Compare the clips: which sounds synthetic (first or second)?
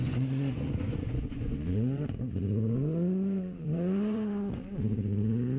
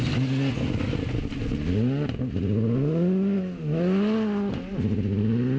first